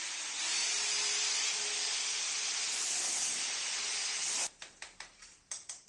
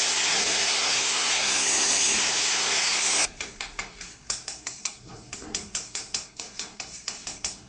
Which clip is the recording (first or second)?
first